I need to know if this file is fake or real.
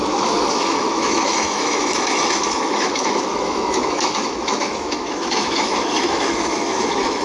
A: fake